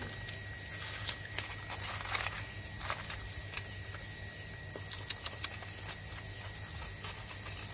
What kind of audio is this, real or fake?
real